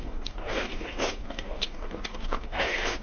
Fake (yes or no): yes